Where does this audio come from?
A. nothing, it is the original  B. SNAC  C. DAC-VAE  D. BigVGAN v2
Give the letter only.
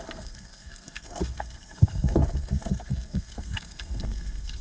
B